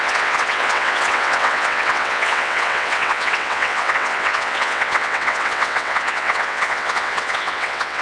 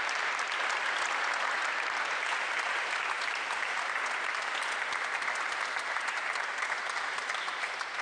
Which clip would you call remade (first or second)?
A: first